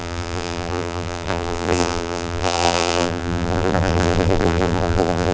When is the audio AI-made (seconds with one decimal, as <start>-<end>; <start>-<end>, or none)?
0.0-5.3